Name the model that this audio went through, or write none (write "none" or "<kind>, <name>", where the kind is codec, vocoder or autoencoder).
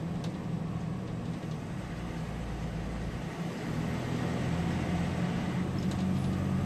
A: none